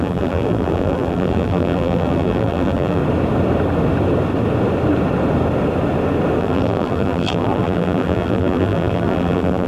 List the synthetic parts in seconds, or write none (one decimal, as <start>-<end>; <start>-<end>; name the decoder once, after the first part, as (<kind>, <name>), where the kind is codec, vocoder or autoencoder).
0.0-3.0 (vocoder, BigVGAN v2); 6.4-9.7